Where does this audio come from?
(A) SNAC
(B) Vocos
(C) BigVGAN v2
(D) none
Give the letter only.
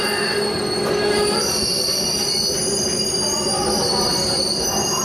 D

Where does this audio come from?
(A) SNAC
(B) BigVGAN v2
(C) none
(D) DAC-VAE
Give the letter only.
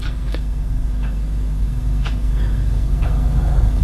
A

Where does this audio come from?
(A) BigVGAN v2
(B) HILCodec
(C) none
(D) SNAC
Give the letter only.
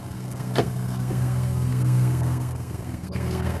D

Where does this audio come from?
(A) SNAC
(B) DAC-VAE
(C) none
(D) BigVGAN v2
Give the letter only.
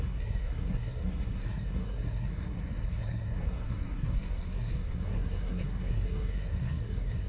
A